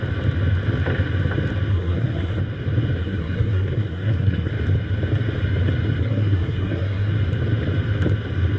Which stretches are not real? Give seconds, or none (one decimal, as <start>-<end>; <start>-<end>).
1.7-2.4; 3.0-4.5; 6.0-7.1